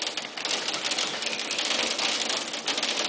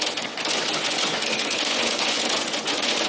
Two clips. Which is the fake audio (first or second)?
second